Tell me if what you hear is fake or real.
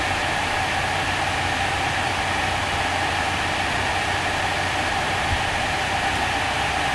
real